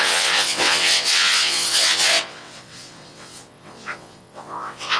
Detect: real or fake fake